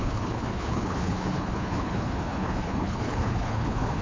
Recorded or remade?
remade